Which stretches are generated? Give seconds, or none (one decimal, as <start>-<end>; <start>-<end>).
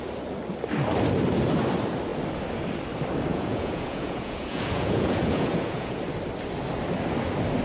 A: 3.3-6.0